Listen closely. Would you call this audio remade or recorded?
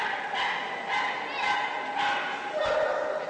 recorded